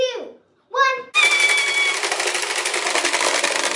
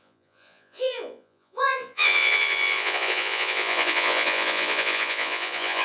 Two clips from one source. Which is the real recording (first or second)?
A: first